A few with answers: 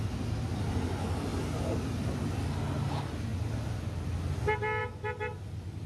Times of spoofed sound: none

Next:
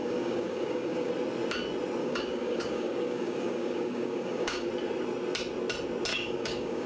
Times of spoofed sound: 0.0-1.1 (codec, DAC); 2.0-4.7; 6.1-6.9

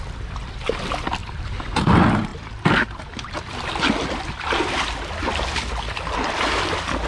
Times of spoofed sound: 1.2-1.7 (vocoder, BigVGAN v2)